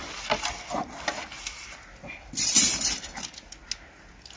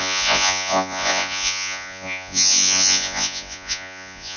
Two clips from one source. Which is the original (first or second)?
first